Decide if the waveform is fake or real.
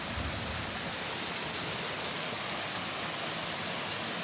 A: real